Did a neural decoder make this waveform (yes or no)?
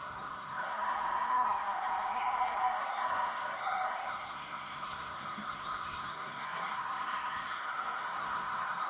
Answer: yes